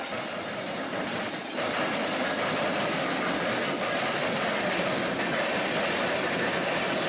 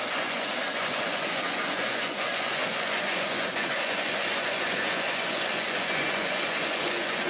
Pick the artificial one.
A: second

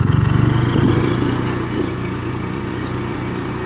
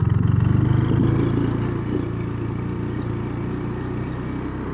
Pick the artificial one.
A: first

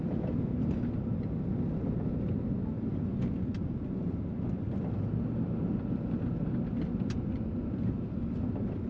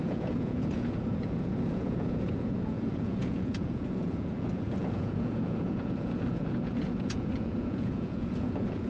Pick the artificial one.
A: second